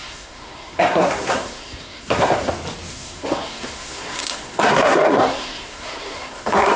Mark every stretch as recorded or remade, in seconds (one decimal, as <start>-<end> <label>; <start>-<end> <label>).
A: 0.0-2.5 remade; 2.5-2.9 recorded; 2.9-6.8 remade